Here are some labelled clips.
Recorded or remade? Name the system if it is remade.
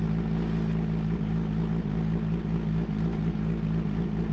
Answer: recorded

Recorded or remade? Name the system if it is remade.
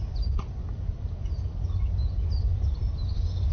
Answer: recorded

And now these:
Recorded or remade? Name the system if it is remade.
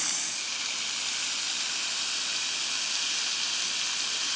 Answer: recorded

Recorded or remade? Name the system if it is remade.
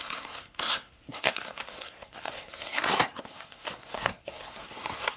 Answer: remade, codec, SNAC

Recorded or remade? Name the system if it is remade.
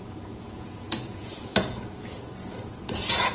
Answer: remade, vocoder, Vocos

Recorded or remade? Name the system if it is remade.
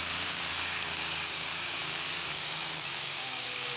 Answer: remade, codec, DAC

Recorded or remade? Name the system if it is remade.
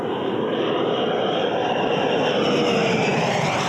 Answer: remade, vocoder, BigVGAN v2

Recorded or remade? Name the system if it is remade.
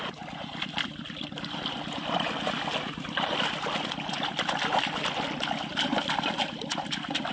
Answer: remade, vocoder, BigVGAN v2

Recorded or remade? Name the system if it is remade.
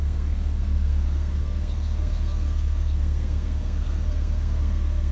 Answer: remade, codec, SNAC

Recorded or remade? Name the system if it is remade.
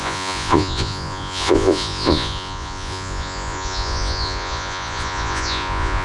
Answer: remade, vocoder, Vocos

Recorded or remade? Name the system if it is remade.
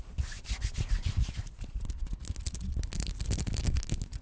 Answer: recorded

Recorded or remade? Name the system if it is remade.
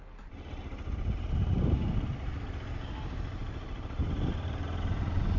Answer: recorded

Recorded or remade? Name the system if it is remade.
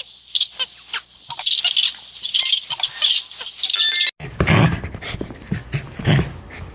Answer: recorded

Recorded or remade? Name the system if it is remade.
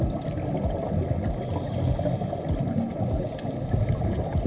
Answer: recorded